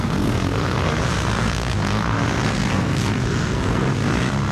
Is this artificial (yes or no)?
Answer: yes